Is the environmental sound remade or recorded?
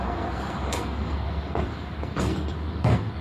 remade